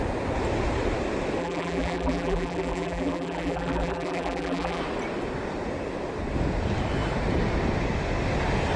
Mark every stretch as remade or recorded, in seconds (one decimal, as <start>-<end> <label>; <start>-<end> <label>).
0.0-1.4 recorded; 1.4-4.8 remade; 4.8-8.8 recorded